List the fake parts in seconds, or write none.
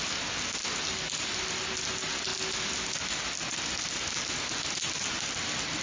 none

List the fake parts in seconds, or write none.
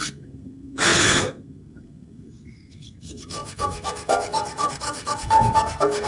0.0-6.1 (codec, SNAC)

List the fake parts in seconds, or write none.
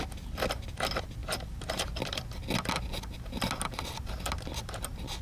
none